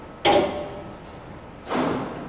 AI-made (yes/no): no